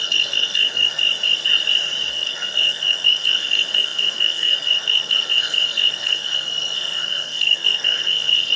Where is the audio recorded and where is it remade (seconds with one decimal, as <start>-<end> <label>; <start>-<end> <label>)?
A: 0.0-1.0 remade; 1.0-2.1 recorded; 2.1-8.6 remade